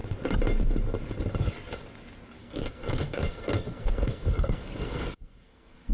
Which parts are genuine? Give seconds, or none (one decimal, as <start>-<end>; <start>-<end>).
0.0-2.4